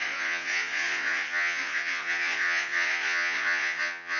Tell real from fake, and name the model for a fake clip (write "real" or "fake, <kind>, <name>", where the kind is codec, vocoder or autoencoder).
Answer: fake, vocoder, Vocos